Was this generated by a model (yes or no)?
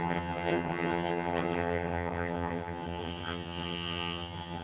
yes